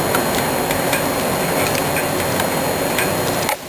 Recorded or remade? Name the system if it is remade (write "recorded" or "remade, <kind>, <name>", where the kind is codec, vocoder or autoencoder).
recorded